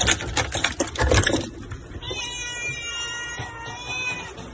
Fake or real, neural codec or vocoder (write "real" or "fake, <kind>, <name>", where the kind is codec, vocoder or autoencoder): real